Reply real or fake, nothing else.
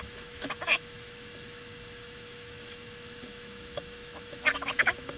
fake